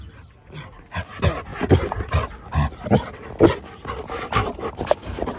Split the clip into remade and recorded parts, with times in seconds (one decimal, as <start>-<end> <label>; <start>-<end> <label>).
0.0-5.4 recorded